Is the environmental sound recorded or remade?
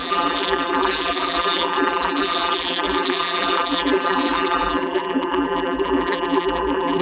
remade